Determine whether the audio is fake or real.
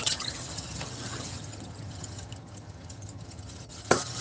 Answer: fake